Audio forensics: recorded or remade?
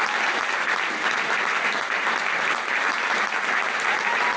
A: recorded